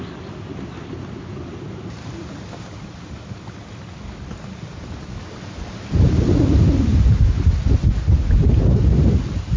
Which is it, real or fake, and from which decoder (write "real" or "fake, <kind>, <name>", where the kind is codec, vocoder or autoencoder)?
real